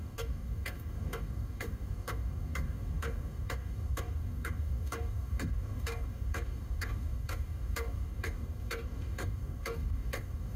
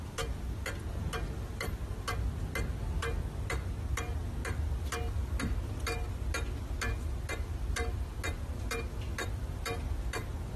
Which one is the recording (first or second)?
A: second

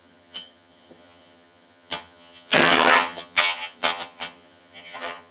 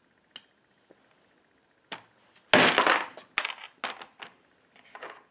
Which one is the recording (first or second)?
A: second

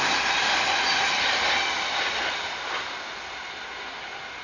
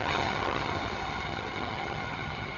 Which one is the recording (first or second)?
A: first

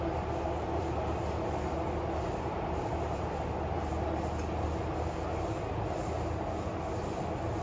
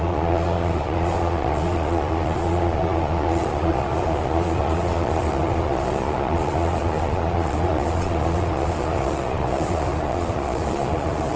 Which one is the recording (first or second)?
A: first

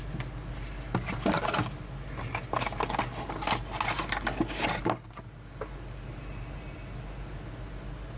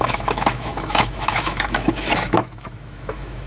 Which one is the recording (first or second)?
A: first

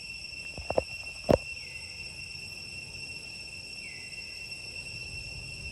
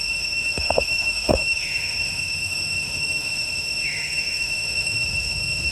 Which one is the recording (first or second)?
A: first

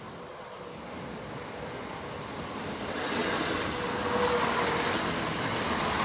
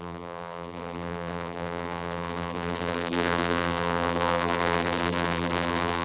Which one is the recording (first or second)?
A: first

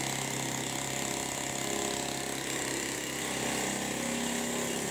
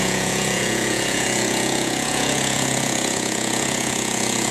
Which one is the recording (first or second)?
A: first